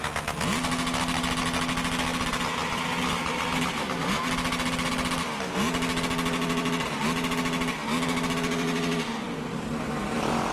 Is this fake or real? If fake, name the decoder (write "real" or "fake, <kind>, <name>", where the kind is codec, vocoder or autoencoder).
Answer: real